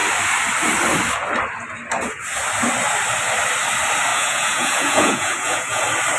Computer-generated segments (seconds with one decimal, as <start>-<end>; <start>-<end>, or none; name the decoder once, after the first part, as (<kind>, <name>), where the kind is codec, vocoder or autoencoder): 4.1-5.8 (vocoder, Vocos)